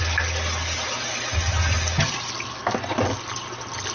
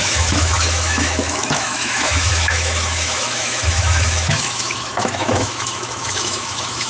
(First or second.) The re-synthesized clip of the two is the second